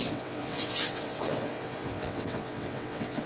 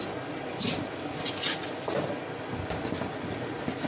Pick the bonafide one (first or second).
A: second